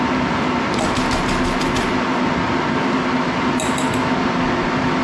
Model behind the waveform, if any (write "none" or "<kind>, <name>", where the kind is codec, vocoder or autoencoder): none